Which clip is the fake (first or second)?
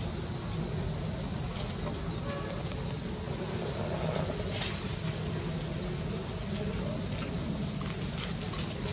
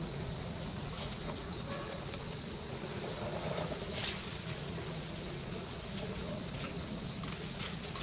second